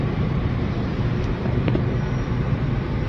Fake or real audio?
fake